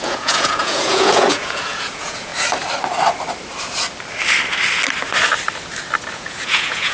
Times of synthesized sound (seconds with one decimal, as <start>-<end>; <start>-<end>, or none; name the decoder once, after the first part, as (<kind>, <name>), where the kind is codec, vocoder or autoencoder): 0.0-2.3 (vocoder, Vocos); 6.1-6.9